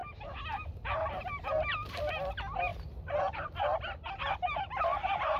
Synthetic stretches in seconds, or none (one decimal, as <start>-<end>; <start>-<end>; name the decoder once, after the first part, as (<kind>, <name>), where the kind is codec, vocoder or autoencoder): 4.9-5.4 (vocoder, BigVGAN v2)